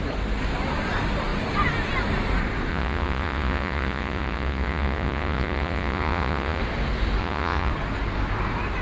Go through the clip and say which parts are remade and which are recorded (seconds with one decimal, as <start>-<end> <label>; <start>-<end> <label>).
0.0-2.7 recorded; 2.7-6.6 remade; 6.6-7.2 recorded; 7.2-7.7 remade; 7.7-8.8 recorded